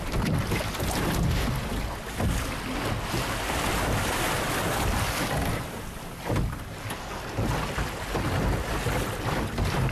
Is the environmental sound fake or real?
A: real